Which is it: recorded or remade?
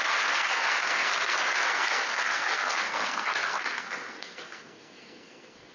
remade